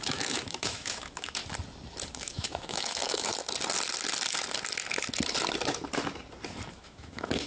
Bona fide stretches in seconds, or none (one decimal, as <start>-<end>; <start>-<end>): 1.4-2.1; 3.3-6.7